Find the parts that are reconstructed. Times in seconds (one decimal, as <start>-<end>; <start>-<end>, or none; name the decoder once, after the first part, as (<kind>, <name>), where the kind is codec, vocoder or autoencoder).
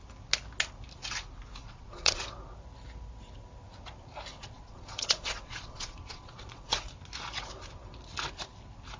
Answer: 1.6-2.2 (vocoder, Vocos); 4.3-6.9